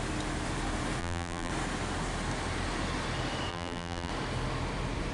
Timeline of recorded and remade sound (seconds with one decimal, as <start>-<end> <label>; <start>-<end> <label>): 0.0-1.0 recorded; 1.0-1.5 remade; 1.5-3.5 recorded; 3.5-4.1 remade; 4.1-5.1 recorded